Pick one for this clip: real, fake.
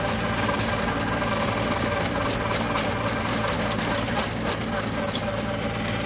real